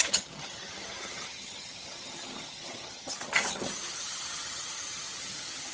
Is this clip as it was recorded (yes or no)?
no